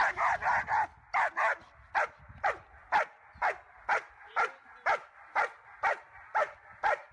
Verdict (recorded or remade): recorded